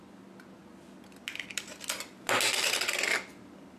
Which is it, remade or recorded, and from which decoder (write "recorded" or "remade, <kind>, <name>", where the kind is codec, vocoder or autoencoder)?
recorded